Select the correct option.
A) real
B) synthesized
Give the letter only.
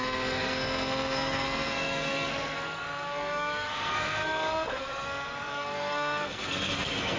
B